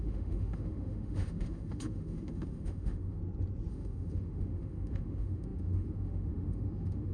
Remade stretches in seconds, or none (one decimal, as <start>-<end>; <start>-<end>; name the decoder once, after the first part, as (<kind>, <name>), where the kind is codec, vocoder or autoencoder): 0.0-3.2 (autoencoder, DAC-VAE); 3.7-7.1